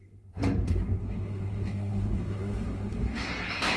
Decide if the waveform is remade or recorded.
remade